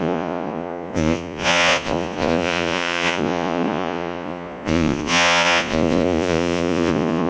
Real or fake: fake